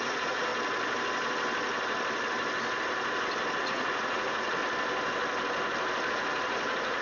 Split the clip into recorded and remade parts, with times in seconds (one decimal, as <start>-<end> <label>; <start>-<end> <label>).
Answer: 0.0-0.5 remade; 0.5-3.6 recorded; 3.6-4.6 remade; 4.6-6.1 recorded; 6.1-7.0 remade